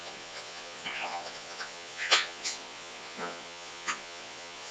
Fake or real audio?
fake